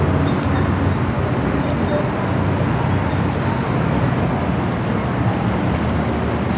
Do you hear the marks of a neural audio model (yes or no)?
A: no